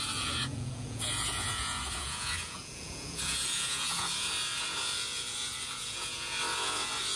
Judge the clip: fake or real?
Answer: fake